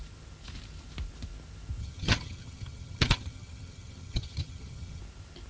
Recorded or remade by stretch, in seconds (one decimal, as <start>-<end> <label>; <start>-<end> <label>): 0.0-1.8 recorded; 1.8-5.0 remade; 5.0-5.5 recorded